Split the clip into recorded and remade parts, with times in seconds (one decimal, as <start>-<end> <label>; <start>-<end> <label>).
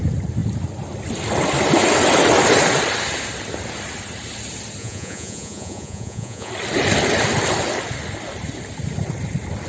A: 0.0-4.8 recorded; 4.8-6.5 remade; 6.5-9.7 recorded